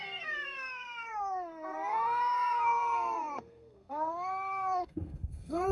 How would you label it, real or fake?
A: fake